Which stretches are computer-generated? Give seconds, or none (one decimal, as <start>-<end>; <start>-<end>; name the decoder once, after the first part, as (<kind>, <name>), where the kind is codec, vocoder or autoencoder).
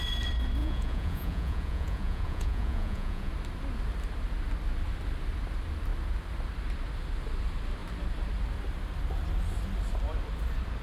0.6-3.3 (vocoder, Vocos)